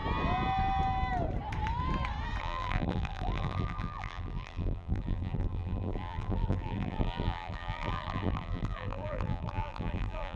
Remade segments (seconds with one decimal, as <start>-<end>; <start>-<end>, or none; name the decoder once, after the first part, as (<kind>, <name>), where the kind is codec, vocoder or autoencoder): 2.4-10.4 (vocoder, BigVGAN v2)